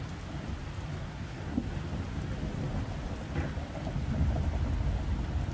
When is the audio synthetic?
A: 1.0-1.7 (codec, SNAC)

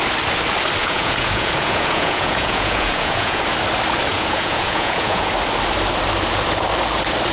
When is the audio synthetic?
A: 0.8-3.4 (vocoder, Vocos); 4.1-5.3

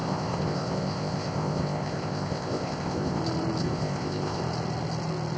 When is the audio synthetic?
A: 0.0-3.2 (codec, ZipCodec); 3.6-4.4

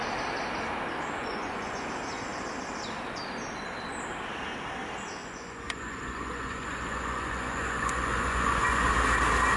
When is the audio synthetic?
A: 1.2-1.9 (vocoder, Vocos); 5.2-8.9